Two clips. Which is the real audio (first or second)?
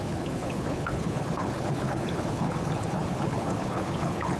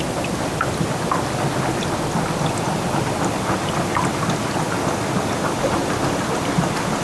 second